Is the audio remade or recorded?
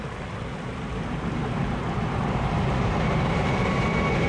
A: recorded